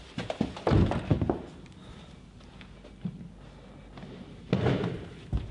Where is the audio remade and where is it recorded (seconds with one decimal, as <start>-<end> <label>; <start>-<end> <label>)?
0.0-5.5 recorded